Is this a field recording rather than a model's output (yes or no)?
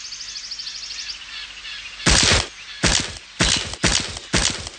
yes